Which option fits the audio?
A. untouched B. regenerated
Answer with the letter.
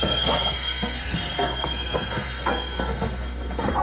B